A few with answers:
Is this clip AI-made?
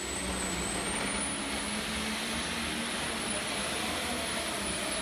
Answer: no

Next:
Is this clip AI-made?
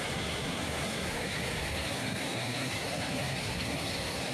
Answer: yes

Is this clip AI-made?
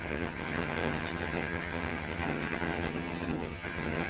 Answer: yes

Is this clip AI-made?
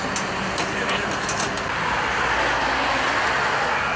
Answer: no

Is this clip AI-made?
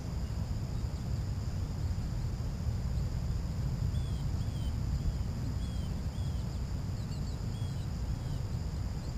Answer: no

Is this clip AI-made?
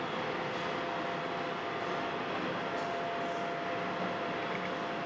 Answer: no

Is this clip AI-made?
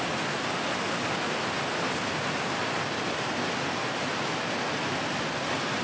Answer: no